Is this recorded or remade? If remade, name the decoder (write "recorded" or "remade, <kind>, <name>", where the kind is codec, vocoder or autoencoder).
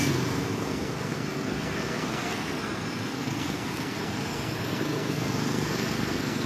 remade, codec, SNAC